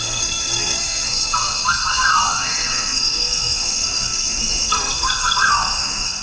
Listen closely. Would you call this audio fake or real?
fake